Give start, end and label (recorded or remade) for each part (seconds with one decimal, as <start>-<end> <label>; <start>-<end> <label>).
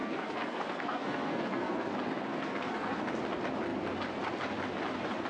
0.0-1.9 remade; 1.9-2.3 recorded; 2.3-3.0 remade; 3.0-5.3 recorded